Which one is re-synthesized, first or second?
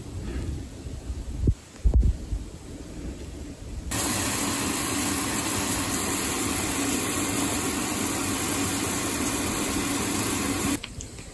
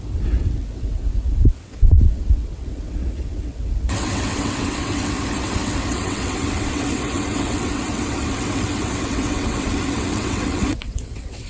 second